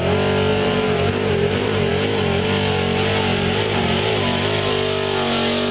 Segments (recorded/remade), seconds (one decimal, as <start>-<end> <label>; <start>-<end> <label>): 0.0-0.5 recorded; 0.5-1.9 remade; 1.9-3.3 recorded; 3.3-4.7 remade; 4.7-5.7 recorded